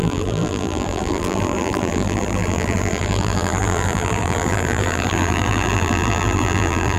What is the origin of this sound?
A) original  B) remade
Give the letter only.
B